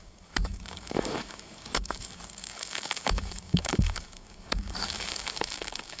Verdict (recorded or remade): remade